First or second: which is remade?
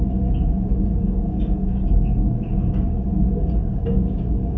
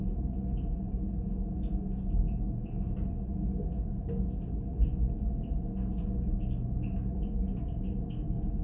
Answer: first